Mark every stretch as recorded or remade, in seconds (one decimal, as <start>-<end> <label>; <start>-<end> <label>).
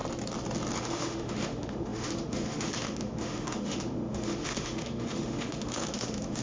0.0-0.8 recorded; 0.8-6.4 remade